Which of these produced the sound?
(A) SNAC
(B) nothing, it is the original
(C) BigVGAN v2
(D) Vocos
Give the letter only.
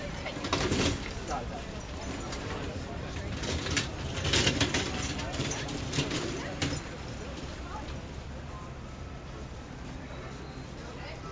C